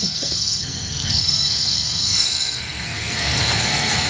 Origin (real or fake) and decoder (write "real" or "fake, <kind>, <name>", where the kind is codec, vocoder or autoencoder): fake, codec, SNAC